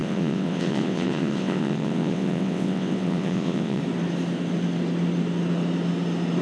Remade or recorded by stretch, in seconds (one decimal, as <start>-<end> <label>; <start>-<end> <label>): 0.0-3.8 remade; 3.8-6.4 recorded